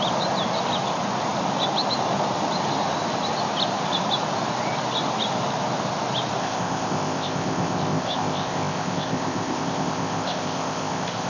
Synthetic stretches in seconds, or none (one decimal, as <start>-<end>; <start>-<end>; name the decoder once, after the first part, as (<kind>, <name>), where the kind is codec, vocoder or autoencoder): 6.4-11.3 (codec, ZipCodec)